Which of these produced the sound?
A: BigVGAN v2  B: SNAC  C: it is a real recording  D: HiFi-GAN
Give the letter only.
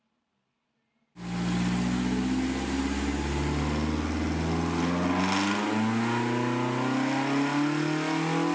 C